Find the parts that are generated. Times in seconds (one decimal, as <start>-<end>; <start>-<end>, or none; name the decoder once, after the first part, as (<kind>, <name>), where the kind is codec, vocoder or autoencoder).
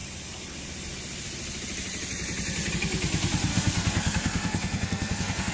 3.5-5.5 (codec, SNAC)